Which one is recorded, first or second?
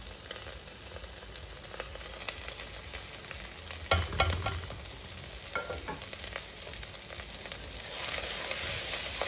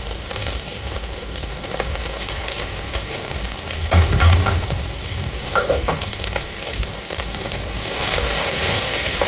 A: first